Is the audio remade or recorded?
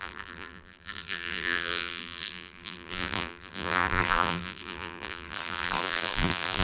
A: remade